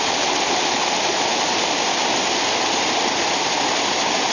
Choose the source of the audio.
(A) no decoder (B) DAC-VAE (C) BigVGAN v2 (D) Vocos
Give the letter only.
A